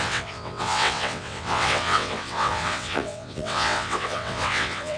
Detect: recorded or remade remade